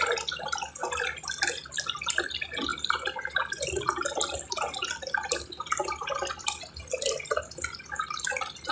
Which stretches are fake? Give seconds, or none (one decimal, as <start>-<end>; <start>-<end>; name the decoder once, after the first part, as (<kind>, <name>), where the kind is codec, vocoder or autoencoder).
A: none